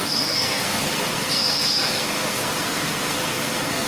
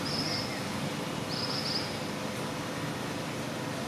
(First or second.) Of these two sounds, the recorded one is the second